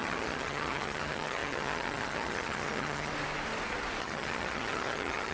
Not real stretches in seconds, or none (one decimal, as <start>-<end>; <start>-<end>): 0.0-3.1; 4.0-5.3